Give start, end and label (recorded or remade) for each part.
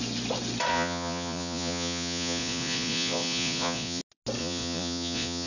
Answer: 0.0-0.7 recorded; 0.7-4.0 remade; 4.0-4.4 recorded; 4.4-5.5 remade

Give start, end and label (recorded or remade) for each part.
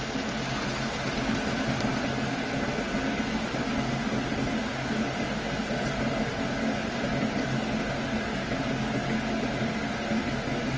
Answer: 0.0-10.8 recorded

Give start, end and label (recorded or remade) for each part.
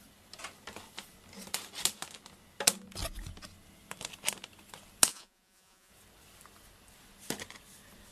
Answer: 0.0-5.1 recorded; 5.1-5.9 remade; 5.9-8.1 recorded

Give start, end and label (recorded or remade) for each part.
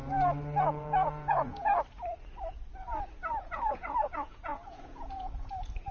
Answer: 0.0-0.6 recorded; 0.6-1.7 remade; 1.7-3.4 recorded; 3.4-5.9 remade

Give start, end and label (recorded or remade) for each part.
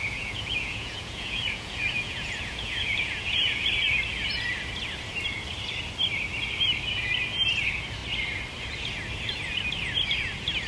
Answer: 0.0-3.6 remade; 3.6-10.7 recorded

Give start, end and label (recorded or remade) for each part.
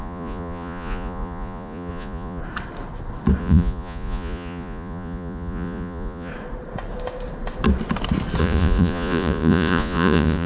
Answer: 0.0-2.4 remade; 2.4-3.4 recorded; 3.4-6.3 remade; 6.3-8.4 recorded; 8.4-10.5 remade